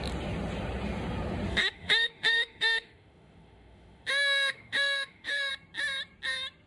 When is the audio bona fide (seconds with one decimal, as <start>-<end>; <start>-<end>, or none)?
0.0-1.5; 5.5-6.7